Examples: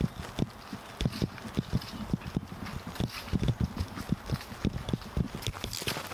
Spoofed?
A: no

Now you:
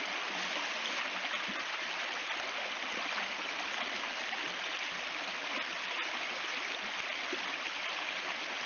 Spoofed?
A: no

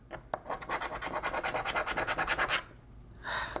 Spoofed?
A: no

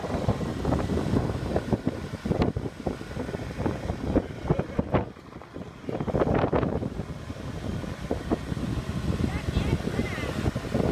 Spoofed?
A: no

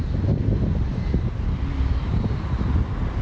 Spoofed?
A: no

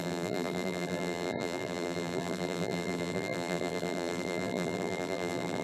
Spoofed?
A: yes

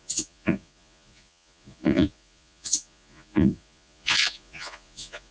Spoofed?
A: yes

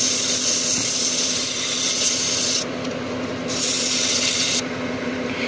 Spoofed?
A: no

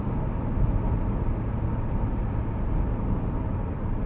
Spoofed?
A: no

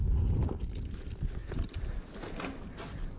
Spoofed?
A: no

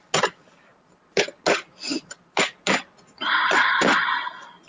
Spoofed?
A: no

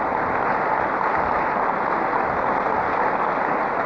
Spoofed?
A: no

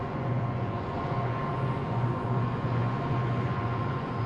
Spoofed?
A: yes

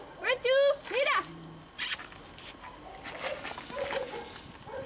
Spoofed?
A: no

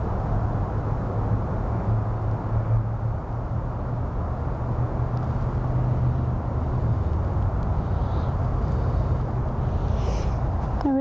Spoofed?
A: no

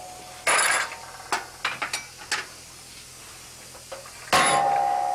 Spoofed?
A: no